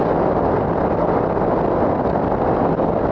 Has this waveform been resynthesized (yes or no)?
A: no